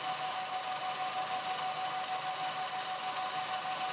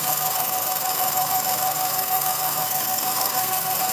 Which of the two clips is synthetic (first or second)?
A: second